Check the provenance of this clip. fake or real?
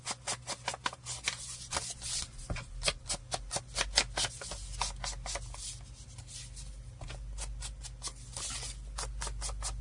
real